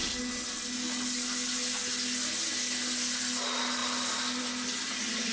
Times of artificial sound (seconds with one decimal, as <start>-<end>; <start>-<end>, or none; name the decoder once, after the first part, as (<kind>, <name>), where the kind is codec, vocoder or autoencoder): none